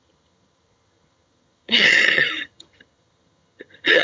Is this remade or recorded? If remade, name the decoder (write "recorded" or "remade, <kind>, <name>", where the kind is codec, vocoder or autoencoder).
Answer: remade, vocoder, HiFi-GAN